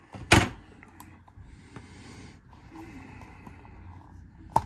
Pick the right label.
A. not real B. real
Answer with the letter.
B